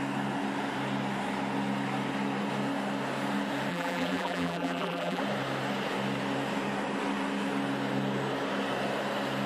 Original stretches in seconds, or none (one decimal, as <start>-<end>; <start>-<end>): 0.0-3.7; 5.2-9.5